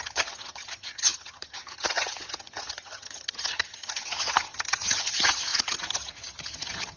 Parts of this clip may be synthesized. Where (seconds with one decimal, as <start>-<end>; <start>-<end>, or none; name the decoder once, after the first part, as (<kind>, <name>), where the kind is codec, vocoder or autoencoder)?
0.0-7.0 (vocoder, HiFi-GAN)